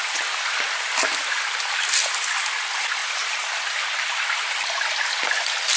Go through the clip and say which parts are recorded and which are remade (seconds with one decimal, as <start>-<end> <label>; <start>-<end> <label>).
0.0-5.8 recorded

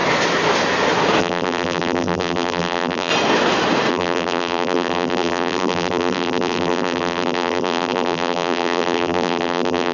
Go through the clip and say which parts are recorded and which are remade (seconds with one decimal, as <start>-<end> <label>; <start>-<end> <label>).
0.0-1.2 recorded; 1.2-3.1 remade; 3.1-3.9 recorded; 3.9-9.9 remade